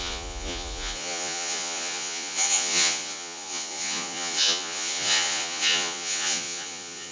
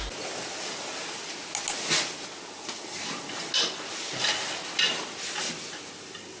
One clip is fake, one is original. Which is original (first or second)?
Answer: second